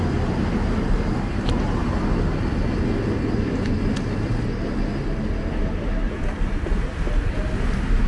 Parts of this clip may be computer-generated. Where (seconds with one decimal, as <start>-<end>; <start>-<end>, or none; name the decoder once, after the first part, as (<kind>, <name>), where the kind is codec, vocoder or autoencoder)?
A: none